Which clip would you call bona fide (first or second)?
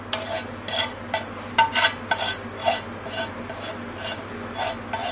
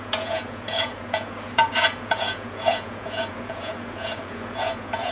first